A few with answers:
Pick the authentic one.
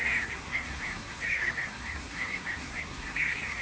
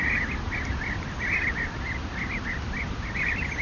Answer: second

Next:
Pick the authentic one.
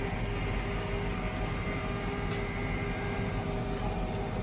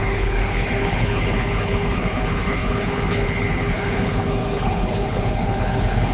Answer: first